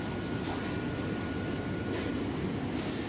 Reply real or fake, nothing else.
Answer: real